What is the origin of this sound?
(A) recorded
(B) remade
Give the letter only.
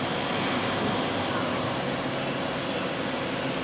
A